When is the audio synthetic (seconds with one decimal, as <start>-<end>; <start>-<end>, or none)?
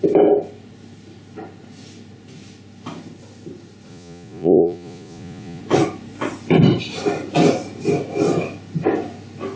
3.9-5.6